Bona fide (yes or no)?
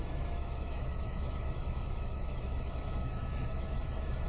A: no